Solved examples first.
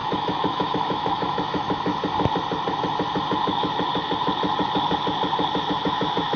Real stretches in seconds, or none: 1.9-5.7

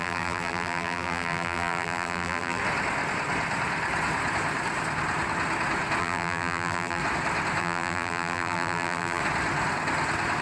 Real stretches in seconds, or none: 2.6-6.0; 7.0-7.6; 9.2-10.4

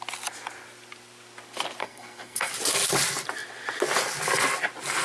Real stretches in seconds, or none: 0.0-1.8; 2.5-5.0

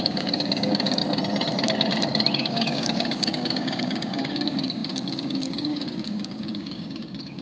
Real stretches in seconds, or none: 1.0-2.3

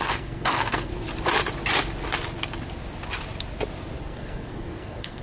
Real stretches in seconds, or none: 0.9-4.0

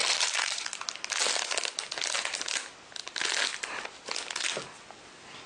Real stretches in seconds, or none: 0.5-5.5

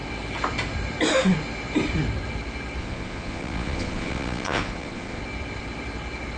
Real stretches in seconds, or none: 0.0-2.8; 5.2-6.4

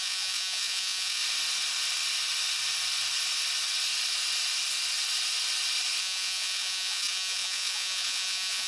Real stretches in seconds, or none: 1.2-6.0